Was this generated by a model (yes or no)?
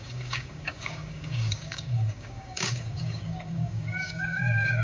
yes